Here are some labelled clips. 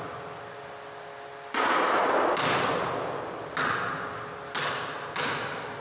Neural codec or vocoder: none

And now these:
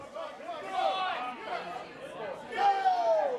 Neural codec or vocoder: none